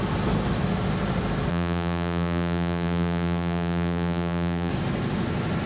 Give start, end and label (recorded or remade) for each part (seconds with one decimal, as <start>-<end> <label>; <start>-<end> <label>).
0.0-1.5 recorded; 1.5-4.7 remade; 4.7-5.7 recorded